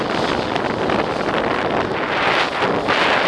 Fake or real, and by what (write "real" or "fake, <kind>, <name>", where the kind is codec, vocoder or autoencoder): real